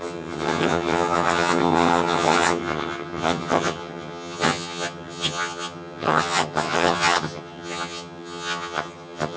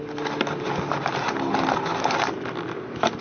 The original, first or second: second